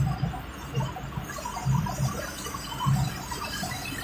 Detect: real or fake real